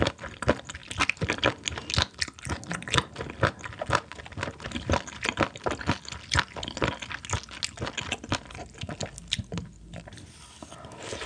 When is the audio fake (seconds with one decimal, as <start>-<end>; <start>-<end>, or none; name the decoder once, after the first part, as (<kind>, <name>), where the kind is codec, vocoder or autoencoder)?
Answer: none